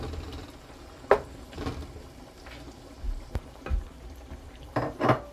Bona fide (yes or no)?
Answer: no